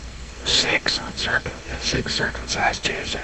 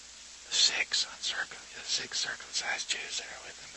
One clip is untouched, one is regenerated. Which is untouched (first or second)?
second